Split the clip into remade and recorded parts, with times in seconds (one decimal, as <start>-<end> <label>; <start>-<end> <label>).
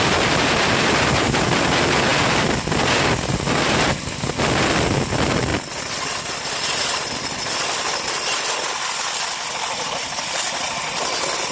0.0-11.5 recorded